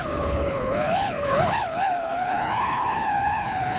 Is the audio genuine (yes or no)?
no